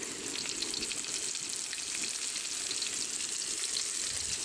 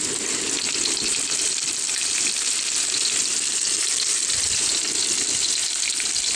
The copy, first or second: second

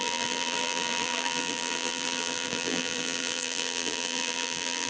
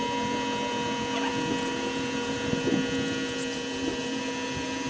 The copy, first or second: first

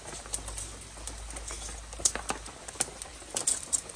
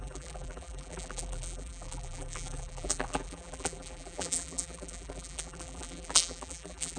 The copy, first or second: second